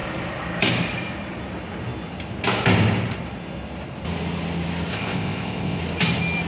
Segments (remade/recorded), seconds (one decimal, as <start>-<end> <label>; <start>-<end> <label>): 0.0-4.9 recorded; 4.9-5.8 remade; 5.8-6.5 recorded